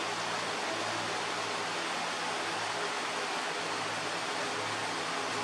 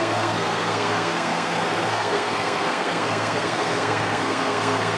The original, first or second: first